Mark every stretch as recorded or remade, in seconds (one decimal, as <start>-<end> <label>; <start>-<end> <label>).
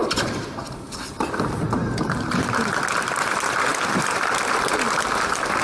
0.0-3.7 remade; 3.7-5.6 recorded